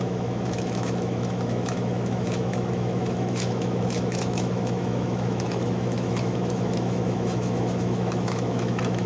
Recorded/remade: remade